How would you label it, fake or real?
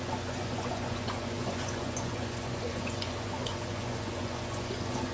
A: fake